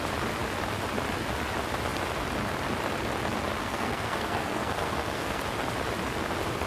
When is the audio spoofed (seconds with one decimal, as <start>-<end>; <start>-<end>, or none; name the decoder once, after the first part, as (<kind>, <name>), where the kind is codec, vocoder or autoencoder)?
3.6-5.4 (codec, SNAC)